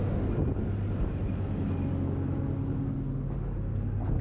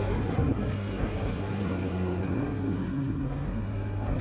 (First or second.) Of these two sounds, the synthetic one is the second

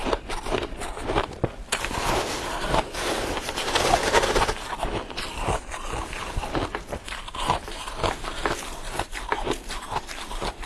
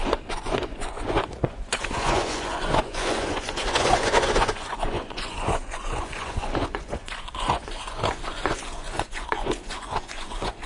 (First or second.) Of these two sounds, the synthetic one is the second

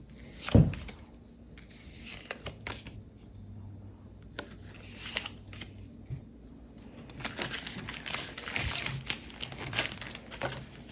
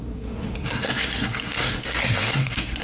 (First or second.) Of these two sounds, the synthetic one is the second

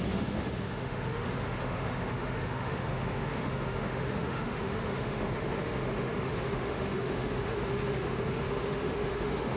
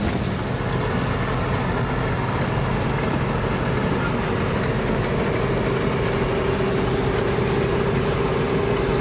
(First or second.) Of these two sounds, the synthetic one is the first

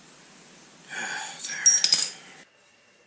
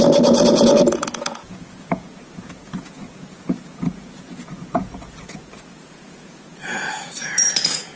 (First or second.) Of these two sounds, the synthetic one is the second